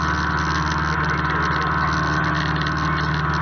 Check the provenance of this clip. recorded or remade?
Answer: recorded